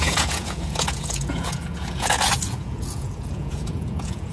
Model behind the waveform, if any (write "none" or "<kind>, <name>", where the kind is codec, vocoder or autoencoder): vocoder, Vocos